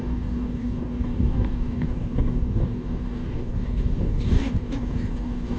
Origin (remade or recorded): remade